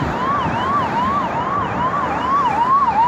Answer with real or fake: real